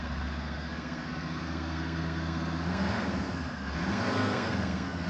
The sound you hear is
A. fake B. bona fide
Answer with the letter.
A